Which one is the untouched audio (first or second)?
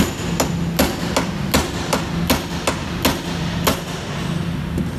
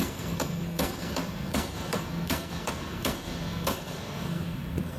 first